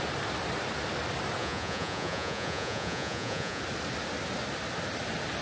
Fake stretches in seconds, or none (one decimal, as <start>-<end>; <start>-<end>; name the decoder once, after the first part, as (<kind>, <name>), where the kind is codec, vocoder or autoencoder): 1.4-3.6 (vocoder, Vocos)